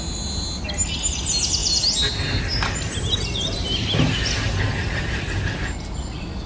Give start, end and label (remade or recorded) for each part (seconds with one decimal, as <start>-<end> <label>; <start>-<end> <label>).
0.0-6.5 recorded